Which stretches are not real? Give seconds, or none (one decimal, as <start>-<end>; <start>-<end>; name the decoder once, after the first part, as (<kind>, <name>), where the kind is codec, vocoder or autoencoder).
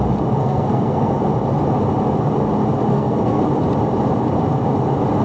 0.4-1.2 (codec, SNAC); 2.9-3.4